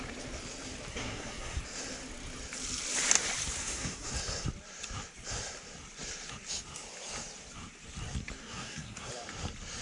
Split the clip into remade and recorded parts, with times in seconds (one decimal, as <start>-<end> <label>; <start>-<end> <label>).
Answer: 0.0-0.9 recorded; 0.9-1.6 remade; 1.6-3.6 recorded; 3.6-4.1 remade; 4.1-8.4 recorded; 8.4-9.1 remade; 9.1-9.8 recorded